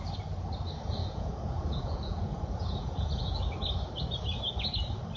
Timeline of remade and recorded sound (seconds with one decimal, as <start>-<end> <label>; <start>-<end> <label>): 0.0-1.0 recorded; 1.0-3.4 remade; 3.4-5.2 recorded